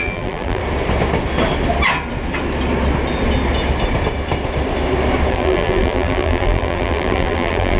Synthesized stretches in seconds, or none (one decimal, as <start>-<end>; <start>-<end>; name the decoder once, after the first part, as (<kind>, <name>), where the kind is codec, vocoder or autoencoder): 0.0-0.6 (vocoder, BigVGAN v2); 5.3-7.8